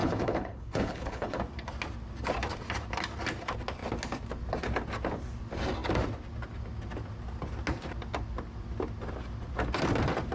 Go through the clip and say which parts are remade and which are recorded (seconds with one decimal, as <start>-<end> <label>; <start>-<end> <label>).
0.0-1.4 remade; 1.4-10.3 recorded